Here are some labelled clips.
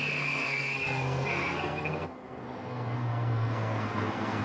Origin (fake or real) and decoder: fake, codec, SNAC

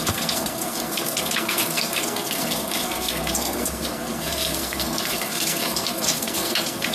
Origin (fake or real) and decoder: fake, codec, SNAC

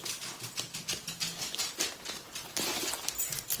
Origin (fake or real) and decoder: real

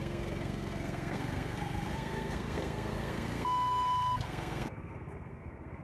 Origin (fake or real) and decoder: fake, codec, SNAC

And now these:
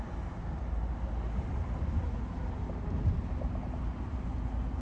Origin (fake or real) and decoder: real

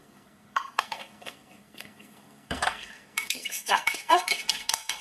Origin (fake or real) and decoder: fake, codec, SNAC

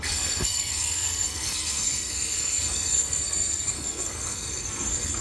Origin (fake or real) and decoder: fake, codec, SNAC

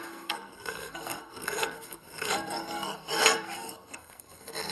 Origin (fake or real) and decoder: fake, codec, SNAC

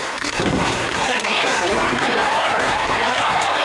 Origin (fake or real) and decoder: fake, codec, SNAC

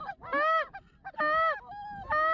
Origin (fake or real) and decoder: real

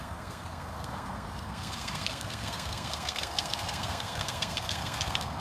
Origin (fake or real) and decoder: fake, codec, SNAC